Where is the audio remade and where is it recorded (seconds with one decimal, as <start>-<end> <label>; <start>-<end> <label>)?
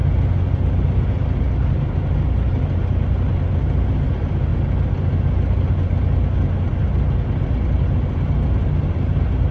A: 0.0-9.5 recorded